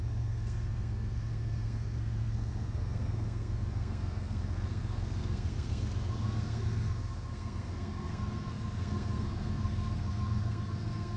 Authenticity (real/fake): fake